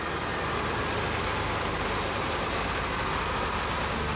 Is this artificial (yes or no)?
no